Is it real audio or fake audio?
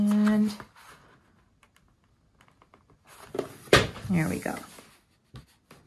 real